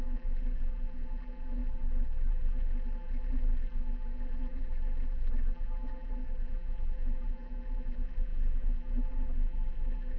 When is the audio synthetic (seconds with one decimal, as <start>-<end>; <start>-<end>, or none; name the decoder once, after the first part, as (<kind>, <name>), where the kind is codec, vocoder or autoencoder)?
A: 0.0-10.2 (vocoder, BigVGAN v2)